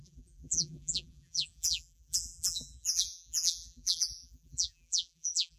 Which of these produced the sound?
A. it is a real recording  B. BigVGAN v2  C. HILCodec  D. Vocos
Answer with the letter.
B